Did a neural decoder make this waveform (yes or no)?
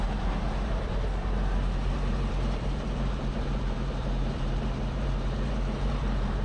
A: yes